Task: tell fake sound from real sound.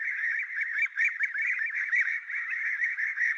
fake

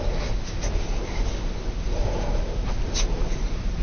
real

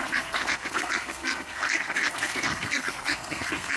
fake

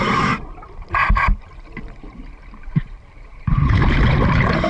fake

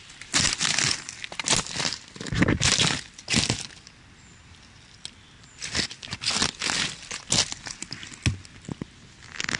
real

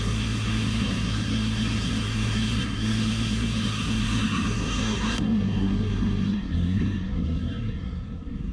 fake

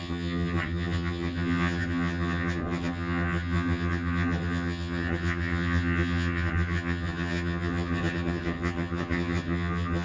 fake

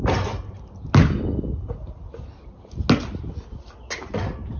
real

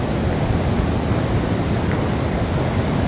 real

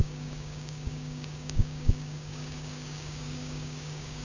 fake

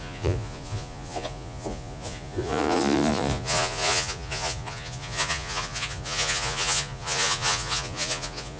fake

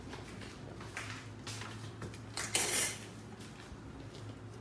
real